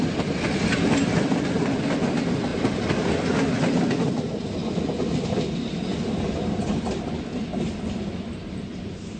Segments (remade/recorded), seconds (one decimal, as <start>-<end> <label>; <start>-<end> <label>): 0.0-9.2 recorded